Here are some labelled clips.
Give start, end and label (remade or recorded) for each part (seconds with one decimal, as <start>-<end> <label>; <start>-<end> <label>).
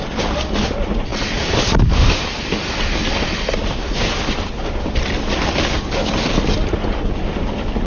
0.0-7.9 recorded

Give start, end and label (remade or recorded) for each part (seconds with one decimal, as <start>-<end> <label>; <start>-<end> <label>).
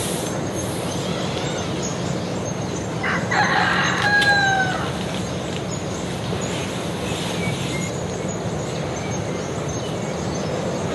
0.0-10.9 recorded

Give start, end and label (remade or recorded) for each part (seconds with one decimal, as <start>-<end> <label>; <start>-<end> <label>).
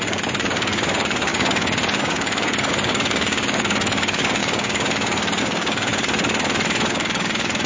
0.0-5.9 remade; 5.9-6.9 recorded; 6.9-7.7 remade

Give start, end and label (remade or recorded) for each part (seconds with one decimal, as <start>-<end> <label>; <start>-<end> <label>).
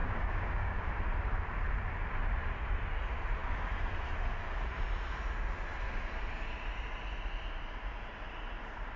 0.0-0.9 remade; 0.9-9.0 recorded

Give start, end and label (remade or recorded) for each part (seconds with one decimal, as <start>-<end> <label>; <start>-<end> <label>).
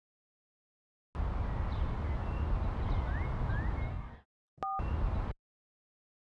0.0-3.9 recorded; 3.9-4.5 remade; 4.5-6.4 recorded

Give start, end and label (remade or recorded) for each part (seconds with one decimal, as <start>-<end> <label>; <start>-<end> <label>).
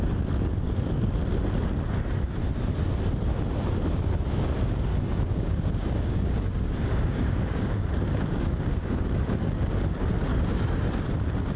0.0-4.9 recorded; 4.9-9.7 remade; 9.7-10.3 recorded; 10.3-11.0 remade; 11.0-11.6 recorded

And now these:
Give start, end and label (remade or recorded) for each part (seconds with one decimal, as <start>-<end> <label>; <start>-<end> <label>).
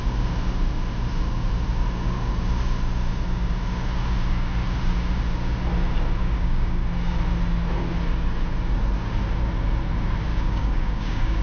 0.0-6.2 recorded; 6.2-6.8 remade; 6.8-10.3 recorded; 10.3-11.4 remade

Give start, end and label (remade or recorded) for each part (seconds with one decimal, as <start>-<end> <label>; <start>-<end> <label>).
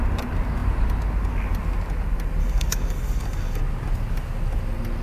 0.0-2.4 recorded; 2.4-3.6 remade; 3.6-5.0 recorded